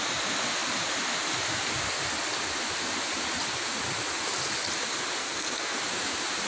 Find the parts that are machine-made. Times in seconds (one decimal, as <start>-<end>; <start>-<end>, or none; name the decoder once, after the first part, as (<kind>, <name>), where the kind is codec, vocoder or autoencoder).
5.2-5.8 (codec, SNAC)